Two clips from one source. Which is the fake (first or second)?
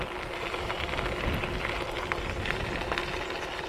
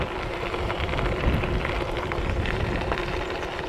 second